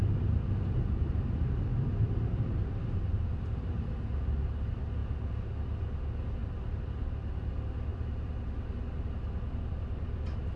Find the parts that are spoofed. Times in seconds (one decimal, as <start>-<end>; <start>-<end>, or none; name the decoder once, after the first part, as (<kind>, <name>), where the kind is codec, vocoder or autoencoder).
0.0-4.2 (vocoder, BigVGAN v2); 6.4-7.5; 7.9-8.5